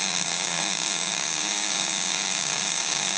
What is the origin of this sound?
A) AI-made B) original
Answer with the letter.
A